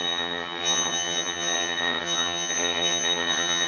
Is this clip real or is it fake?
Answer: fake